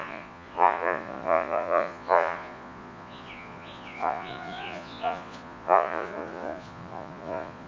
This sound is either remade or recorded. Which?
remade